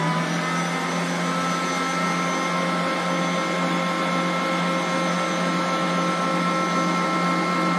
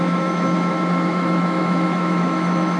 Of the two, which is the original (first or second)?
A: first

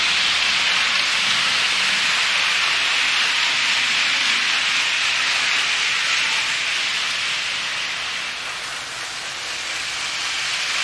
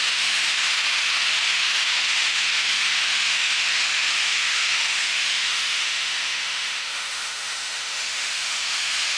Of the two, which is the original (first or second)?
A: first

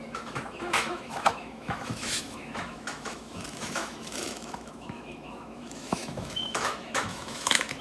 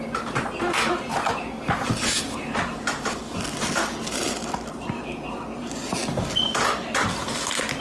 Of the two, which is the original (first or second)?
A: second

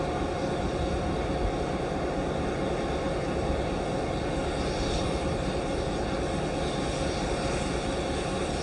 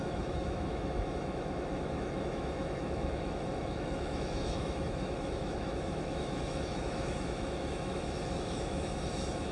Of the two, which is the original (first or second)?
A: first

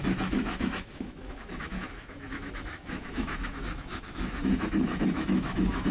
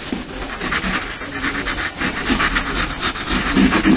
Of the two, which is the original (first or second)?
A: second